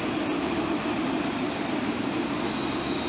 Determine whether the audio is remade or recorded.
recorded